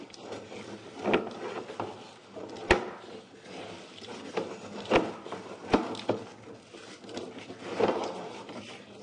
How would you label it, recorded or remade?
recorded